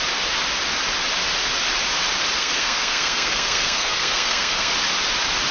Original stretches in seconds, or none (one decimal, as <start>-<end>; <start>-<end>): 0.0-2.4; 4.7-5.5